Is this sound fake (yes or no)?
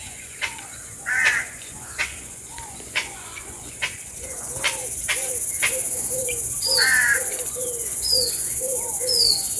yes